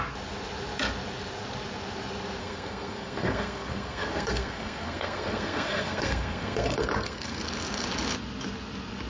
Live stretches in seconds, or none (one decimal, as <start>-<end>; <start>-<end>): 0.0-2.4; 7.4-9.1